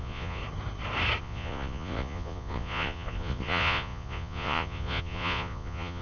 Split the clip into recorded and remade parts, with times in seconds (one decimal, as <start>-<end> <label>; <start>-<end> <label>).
0.0-0.4 remade; 0.4-1.2 recorded; 1.2-6.0 remade